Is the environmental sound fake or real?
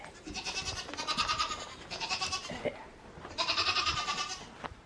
fake